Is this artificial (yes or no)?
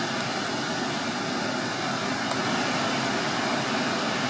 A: no